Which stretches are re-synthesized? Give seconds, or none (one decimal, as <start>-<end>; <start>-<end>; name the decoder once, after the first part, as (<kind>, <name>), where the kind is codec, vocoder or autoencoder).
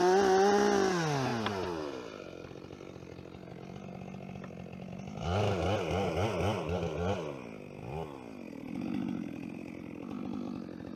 none